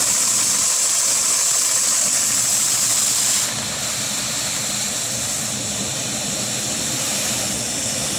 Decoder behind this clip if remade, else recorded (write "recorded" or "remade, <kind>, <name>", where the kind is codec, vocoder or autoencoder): recorded